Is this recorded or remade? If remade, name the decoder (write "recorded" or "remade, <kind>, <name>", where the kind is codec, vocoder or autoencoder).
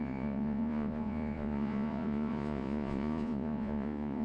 remade, vocoder, Vocos